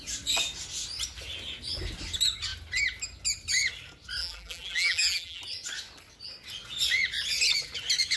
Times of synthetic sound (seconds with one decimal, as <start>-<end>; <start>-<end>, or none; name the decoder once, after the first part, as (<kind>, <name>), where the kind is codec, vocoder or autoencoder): 4.2-5.4 (vocoder, BigVGAN v2)